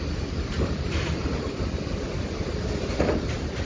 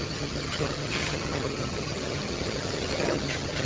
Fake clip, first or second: second